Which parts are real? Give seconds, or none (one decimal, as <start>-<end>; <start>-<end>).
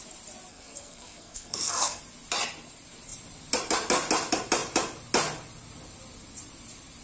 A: 0.0-0.5; 2.0-7.0